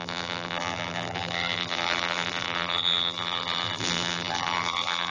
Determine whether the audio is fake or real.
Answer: fake